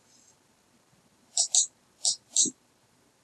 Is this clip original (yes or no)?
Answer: no